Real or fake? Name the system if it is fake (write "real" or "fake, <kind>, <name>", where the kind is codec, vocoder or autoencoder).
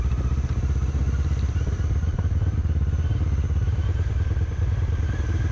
fake, vocoder, BigVGAN v2